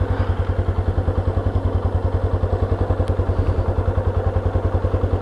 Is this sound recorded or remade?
recorded